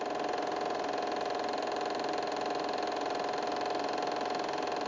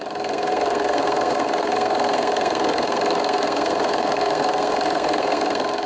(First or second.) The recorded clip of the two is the first